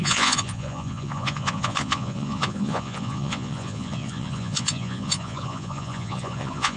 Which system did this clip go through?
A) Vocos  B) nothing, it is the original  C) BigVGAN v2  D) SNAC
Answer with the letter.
A